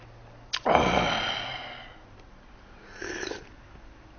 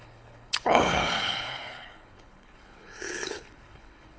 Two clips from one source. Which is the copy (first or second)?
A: second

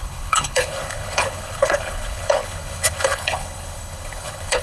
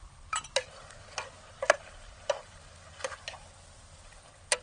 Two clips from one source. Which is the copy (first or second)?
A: first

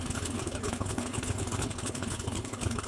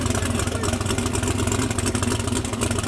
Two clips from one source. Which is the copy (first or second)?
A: first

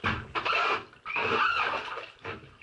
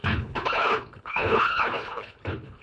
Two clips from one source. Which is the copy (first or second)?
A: second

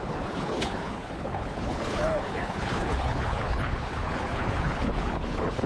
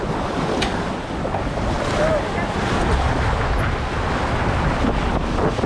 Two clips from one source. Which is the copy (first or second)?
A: first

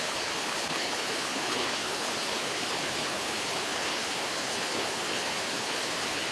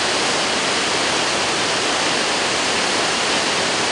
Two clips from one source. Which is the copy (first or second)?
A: first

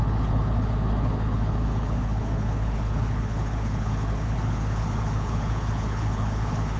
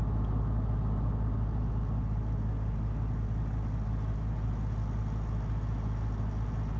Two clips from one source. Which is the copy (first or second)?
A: first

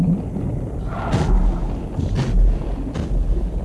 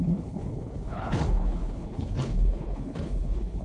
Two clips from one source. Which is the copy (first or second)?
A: second